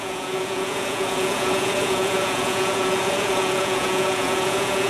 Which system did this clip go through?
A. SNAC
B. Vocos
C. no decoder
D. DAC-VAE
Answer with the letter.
B